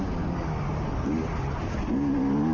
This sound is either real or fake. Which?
real